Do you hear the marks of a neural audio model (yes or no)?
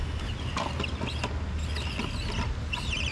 no